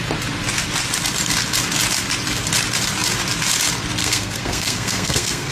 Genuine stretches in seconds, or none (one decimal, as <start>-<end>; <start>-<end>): 0.0-4.0